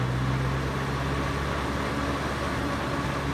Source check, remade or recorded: recorded